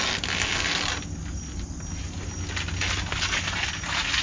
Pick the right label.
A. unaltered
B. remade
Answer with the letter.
A